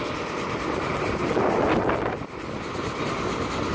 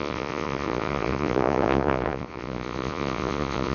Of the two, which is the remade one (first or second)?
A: second